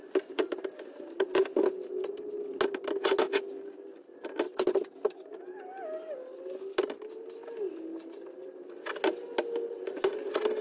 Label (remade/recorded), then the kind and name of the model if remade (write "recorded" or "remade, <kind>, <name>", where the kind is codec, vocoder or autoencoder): recorded